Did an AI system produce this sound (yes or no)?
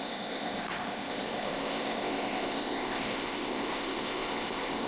yes